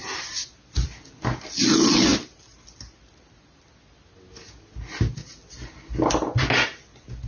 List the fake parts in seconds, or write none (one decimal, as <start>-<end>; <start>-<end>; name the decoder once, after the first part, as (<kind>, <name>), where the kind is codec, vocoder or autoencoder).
none